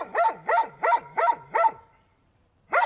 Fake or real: fake